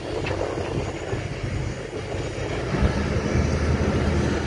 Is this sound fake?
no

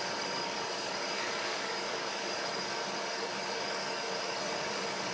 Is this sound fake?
yes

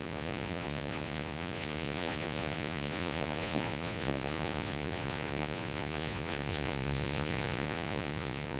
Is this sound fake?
yes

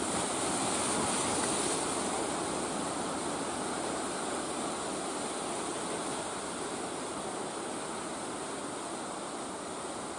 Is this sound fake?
no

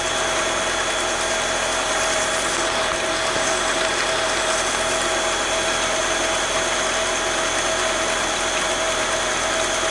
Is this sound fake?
no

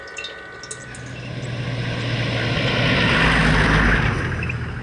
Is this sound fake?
no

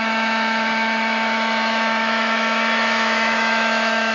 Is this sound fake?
yes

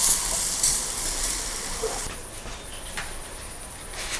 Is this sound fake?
no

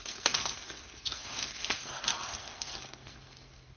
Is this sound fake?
yes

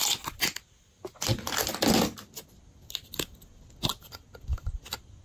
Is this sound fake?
no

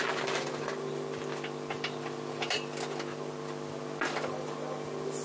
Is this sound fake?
no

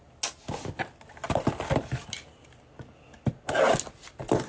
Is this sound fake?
no